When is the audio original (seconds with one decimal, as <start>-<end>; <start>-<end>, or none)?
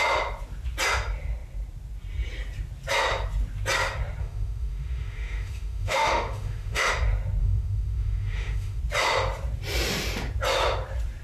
0.0-4.2; 6.9-7.4; 8.8-11.2